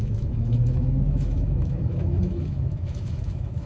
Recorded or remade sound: remade